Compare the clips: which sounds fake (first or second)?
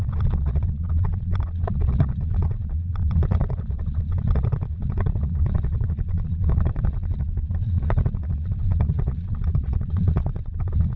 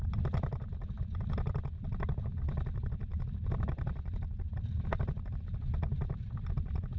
first